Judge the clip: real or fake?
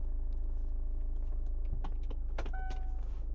real